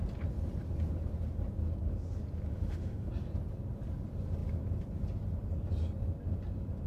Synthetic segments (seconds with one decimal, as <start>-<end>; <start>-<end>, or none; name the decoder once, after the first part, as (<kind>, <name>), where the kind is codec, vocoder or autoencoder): 2.5-3.1 (autoencoder, DAC-VAE)